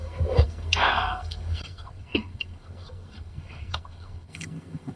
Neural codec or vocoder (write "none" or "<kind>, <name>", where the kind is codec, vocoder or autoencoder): codec, SNAC